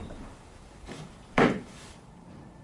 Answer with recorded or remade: remade